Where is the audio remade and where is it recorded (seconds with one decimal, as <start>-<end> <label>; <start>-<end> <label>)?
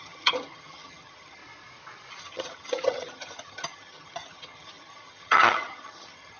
0.0-1.4 remade; 1.4-2.2 recorded; 2.2-6.4 remade